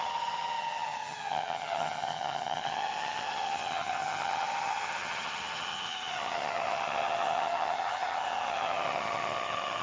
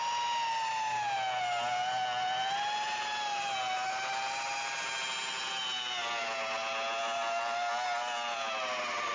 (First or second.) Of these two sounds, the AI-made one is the first